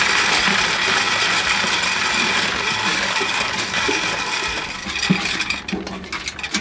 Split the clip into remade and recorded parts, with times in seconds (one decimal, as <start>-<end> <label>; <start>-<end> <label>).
0.0-2.9 recorded; 2.9-4.6 remade; 4.6-6.6 recorded